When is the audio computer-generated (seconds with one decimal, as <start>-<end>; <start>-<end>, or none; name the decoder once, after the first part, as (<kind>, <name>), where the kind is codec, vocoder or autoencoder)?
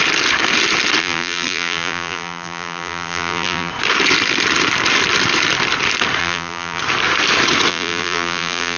1.0-3.7 (vocoder, BigVGAN v2); 6.2-6.8; 7.7-8.8